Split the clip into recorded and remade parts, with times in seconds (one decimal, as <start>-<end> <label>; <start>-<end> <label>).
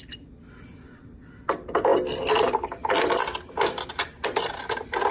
0.0-5.1 recorded